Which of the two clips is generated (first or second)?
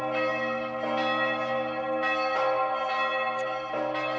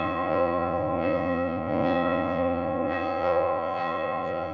second